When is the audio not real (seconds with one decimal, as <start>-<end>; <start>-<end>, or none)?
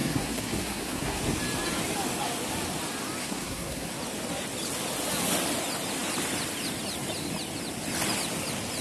0.0-1.2; 3.2-3.9